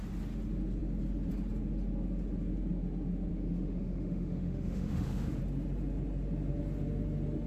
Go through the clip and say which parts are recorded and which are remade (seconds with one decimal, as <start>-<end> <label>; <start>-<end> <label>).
0.0-3.3 recorded; 3.3-5.4 remade; 5.4-7.5 recorded